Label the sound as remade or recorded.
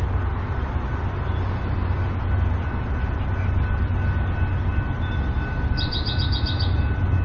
recorded